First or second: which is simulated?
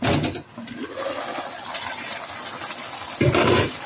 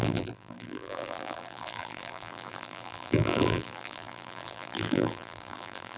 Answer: second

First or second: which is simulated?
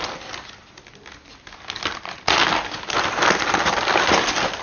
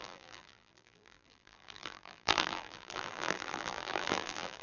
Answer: second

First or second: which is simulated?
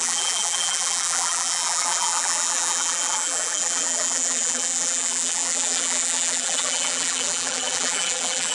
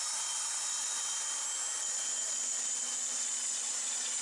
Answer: first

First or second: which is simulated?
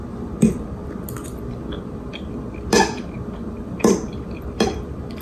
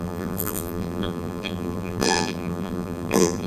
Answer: second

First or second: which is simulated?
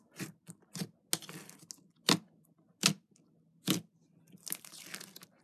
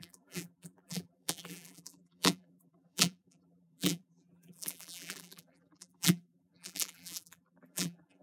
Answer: second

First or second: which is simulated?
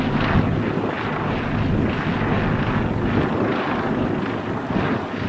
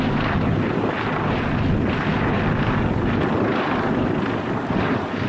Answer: second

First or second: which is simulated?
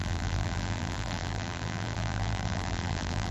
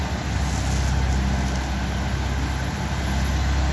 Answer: first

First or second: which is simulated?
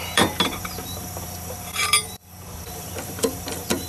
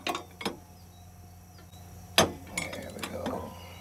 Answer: first